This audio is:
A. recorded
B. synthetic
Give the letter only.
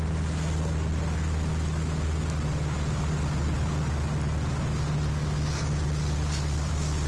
A